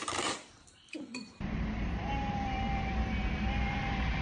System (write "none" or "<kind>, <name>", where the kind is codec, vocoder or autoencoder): vocoder, BigVGAN v2